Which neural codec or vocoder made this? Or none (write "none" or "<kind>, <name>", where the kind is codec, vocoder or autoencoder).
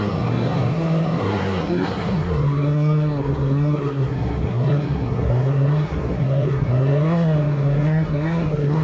codec, SNAC